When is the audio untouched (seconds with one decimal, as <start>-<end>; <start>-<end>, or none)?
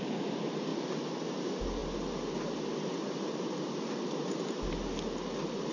0.0-5.7